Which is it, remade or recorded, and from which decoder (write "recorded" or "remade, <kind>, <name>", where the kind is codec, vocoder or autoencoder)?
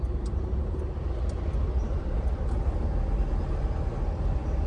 recorded